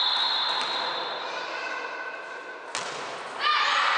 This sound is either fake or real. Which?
real